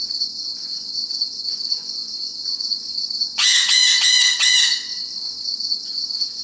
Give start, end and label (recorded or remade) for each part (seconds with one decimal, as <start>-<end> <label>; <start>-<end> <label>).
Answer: 0.0-4.9 remade; 4.9-5.4 recorded; 5.4-6.4 remade